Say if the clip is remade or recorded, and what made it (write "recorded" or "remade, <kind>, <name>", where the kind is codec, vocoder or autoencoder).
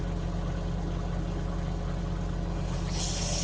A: recorded